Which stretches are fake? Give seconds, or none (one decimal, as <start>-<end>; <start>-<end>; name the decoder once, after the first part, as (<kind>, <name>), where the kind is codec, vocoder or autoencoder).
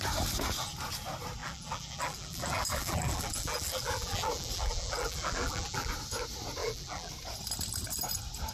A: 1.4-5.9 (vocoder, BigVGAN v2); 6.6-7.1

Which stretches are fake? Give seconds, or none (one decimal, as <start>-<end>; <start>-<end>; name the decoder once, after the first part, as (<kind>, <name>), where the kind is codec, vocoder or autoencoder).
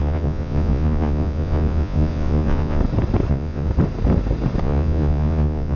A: 0.0-2.8 (vocoder, Vocos); 3.3-3.7; 4.6-5.8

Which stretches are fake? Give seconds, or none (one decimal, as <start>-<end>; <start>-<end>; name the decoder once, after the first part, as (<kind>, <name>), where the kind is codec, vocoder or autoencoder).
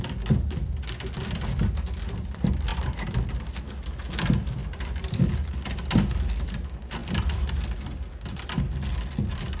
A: 4.6-5.2 (vocoder, BigVGAN v2)